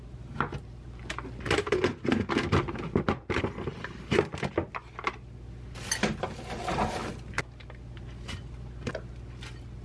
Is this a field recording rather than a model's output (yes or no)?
yes